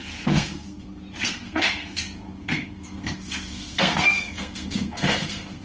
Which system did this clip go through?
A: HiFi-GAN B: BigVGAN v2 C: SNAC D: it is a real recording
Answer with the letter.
C